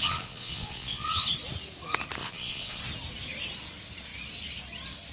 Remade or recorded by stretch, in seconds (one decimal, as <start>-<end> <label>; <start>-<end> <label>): 0.0-1.3 remade; 1.3-2.2 recorded; 2.2-2.8 remade; 2.8-5.1 recorded